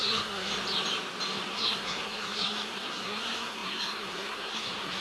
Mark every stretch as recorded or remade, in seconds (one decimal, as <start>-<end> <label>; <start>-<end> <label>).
0.0-0.5 remade; 0.5-1.5 recorded; 1.5-5.0 remade